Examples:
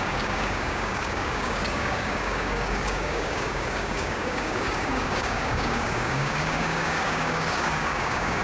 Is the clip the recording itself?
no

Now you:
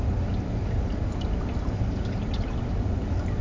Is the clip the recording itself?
yes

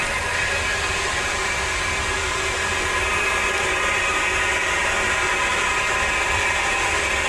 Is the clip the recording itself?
yes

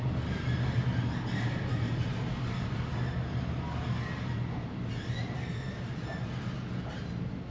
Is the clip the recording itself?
yes